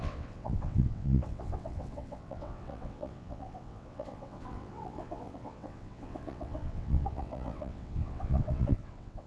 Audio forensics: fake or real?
fake